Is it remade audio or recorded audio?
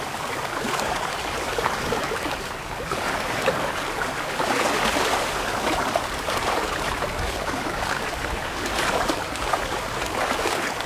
remade